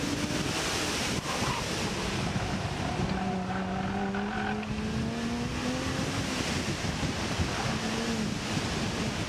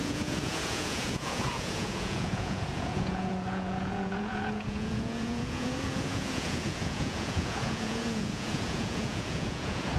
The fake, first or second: second